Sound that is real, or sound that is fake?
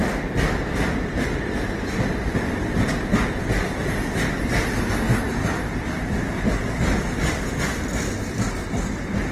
real